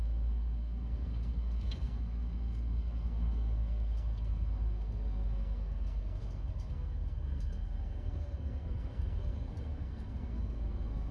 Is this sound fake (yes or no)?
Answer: yes